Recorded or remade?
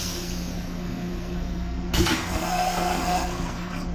remade